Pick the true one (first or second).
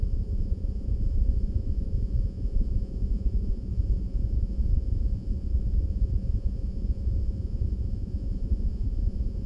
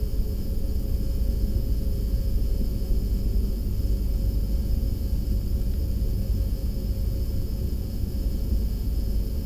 second